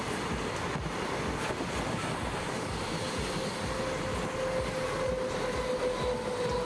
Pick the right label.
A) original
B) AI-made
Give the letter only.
A